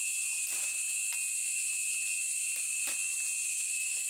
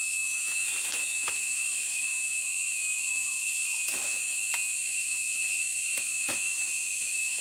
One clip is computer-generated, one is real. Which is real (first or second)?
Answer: first